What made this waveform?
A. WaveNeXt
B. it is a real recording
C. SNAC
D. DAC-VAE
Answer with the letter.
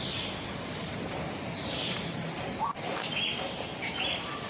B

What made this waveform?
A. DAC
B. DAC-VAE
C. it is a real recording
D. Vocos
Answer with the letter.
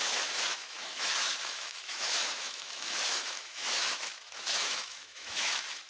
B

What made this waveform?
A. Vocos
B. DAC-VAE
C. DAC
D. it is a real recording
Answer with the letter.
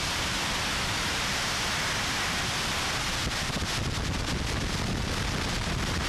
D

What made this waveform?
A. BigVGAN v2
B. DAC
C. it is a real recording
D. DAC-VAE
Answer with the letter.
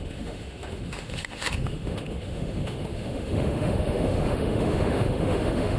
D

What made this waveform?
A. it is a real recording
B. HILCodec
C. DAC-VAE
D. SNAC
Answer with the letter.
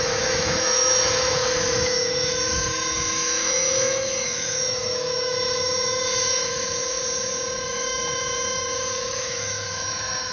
C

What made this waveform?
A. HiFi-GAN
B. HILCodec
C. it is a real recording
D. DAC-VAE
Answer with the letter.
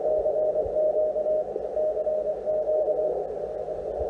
C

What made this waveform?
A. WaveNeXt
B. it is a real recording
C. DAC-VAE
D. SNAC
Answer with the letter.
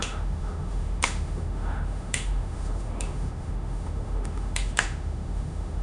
C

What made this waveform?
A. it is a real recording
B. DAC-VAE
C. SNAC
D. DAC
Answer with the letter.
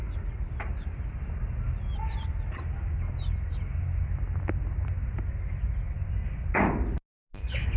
A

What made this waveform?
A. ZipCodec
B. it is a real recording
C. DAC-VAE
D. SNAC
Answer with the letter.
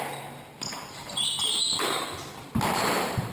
B